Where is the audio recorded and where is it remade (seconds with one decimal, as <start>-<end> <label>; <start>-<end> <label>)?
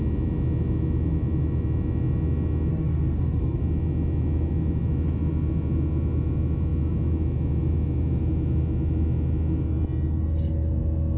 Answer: 0.0-2.7 recorded; 2.7-3.6 remade; 3.6-11.2 recorded